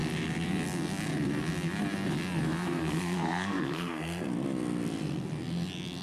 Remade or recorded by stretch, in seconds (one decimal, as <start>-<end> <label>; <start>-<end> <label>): 0.0-2.6 recorded; 2.6-4.3 remade; 4.3-6.0 recorded